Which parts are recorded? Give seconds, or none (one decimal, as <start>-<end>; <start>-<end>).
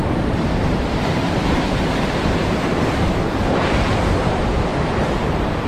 2.4-3.5; 4.7-5.7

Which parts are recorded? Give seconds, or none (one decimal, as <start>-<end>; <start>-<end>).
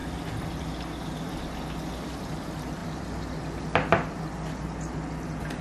0.0-2.8; 3.4-5.6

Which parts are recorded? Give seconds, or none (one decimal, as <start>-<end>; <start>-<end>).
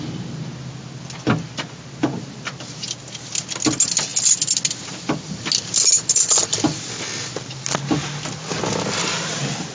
0.0-9.7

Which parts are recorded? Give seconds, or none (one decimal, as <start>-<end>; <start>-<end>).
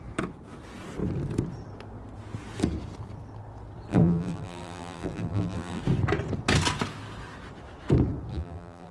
0.0-3.9; 5.8-8.3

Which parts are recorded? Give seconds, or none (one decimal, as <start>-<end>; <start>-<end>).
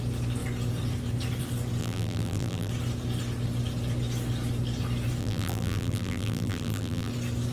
0.0-1.8; 2.7-5.2; 7.1-7.5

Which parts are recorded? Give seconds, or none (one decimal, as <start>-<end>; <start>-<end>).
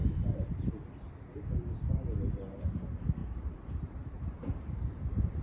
0.7-3.2